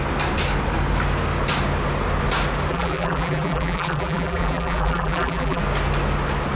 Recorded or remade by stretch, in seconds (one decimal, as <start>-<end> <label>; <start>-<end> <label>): 0.0-2.7 recorded; 2.7-5.6 remade; 5.6-6.5 recorded